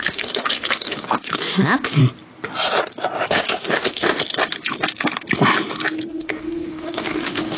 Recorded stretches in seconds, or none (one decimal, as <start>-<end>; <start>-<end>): 2.0-3.3; 4.1-6.1